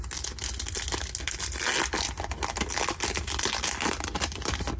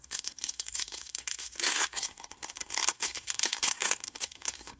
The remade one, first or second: second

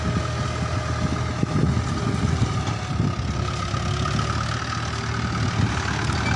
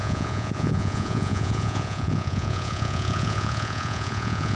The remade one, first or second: second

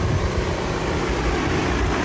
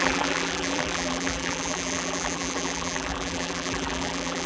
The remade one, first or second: second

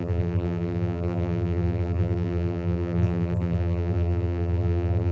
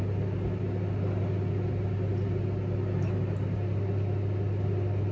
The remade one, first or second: first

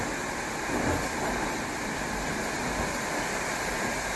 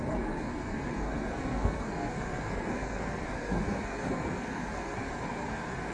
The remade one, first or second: second